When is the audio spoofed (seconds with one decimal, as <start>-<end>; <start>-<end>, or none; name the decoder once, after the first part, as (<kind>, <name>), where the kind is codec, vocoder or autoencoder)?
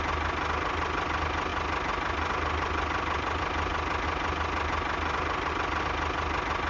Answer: none